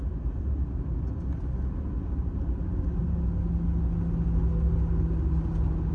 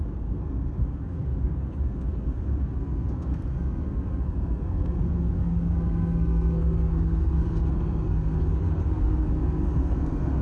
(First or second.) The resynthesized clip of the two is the second